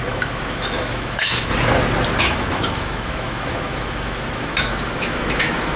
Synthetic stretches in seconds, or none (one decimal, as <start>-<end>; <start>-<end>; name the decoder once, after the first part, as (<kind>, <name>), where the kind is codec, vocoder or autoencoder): 0.0-1.5 (autoencoder, DAC-VAE); 2.2-5.8